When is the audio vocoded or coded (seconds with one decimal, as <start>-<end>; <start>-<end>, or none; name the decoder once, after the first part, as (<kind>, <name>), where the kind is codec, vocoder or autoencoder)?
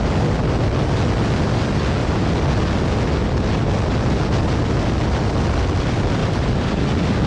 2.0-2.5 (vocoder, BigVGAN v2); 6.2-6.8